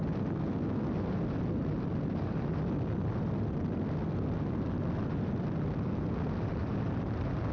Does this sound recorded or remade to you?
recorded